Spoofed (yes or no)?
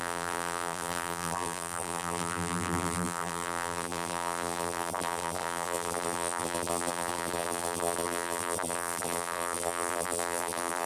yes